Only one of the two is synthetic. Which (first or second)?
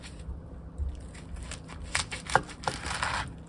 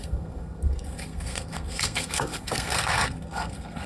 second